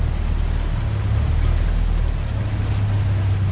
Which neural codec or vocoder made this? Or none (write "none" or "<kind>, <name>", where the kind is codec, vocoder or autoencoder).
none